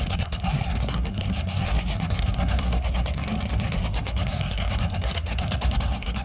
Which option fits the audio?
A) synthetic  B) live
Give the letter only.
A